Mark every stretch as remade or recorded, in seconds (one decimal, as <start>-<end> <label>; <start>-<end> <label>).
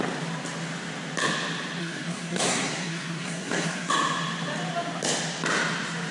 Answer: 0.0-1.8 recorded; 1.8-3.9 remade; 3.9-6.1 recorded